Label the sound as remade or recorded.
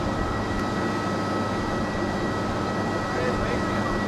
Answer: recorded